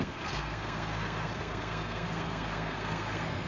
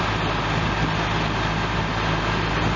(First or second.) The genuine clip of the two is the second